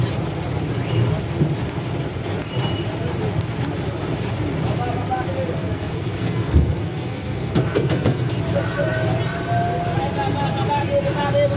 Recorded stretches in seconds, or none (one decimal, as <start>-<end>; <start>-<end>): 0.0-5.6; 8.3-11.6